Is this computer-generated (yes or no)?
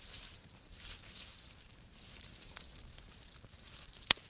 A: yes